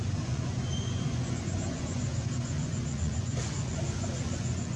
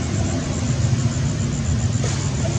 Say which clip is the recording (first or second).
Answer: second